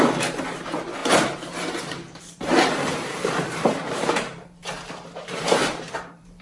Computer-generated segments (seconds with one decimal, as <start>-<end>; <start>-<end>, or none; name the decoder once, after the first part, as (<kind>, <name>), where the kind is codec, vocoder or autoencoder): 0.0-6.4 (vocoder, BigVGAN v2)

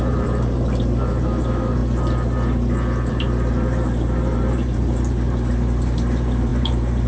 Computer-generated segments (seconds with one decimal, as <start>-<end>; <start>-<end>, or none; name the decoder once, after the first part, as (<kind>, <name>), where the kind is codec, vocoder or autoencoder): 0.0-1.8 (vocoder, BigVGAN v2); 3.1-7.1

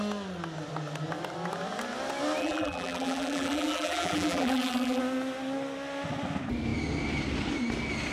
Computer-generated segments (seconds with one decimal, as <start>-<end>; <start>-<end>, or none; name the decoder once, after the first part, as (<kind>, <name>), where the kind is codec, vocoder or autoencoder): 2.4-5.0 (vocoder, BigVGAN v2)

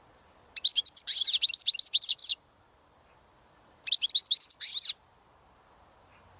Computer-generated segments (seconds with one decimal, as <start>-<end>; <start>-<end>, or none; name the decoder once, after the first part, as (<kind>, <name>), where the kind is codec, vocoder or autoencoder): 0.7-1.4 (vocoder, BigVGAN v2); 2.2-3.9

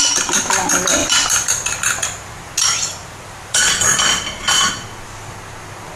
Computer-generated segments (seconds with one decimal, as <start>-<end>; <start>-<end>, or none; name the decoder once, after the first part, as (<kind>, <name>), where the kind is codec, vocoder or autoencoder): 1.0-2.5 (vocoder, BigVGAN v2); 3.0-4.7

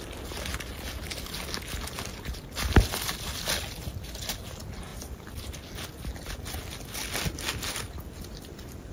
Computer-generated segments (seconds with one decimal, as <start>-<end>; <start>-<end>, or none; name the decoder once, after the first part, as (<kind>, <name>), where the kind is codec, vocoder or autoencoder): none

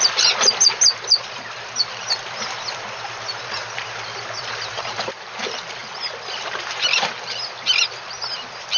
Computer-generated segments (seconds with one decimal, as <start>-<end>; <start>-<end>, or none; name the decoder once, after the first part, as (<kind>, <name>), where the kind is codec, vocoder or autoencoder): 0.0-8.8 (vocoder, BigVGAN v2)